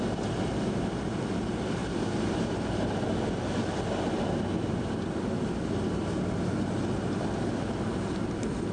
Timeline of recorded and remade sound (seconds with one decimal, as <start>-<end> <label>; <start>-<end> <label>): 0.0-8.7 recorded